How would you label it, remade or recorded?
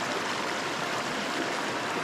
recorded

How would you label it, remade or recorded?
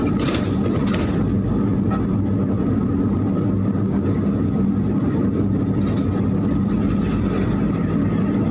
recorded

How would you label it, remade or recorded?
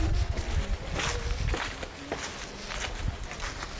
recorded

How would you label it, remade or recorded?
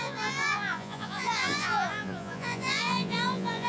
remade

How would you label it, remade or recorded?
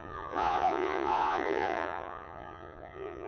remade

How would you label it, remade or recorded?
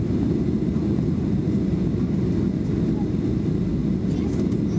recorded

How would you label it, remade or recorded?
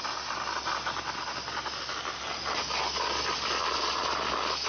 recorded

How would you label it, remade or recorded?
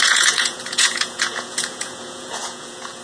remade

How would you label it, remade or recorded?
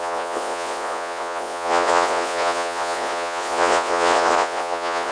remade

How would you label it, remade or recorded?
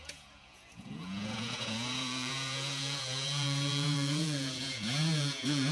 remade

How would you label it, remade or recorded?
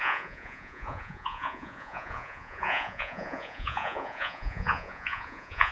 remade